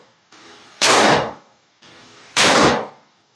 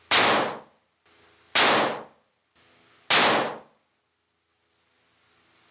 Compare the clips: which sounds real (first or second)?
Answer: second